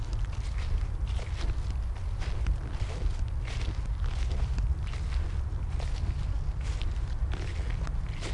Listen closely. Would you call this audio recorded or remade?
recorded